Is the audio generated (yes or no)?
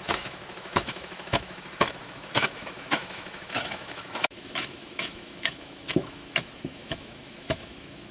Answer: yes